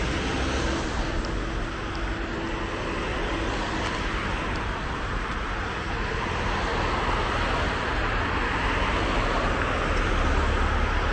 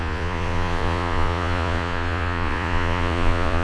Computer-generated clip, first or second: second